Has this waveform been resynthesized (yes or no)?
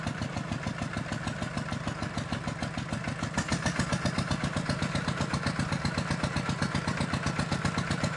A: no